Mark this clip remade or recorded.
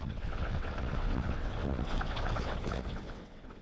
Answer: remade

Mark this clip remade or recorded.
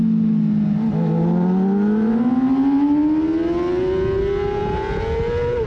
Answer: recorded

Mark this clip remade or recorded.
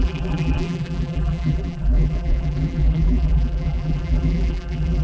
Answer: remade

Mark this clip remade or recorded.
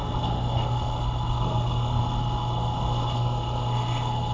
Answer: remade